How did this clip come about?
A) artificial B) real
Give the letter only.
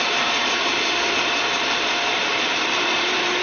A